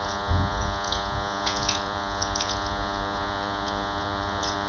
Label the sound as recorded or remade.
remade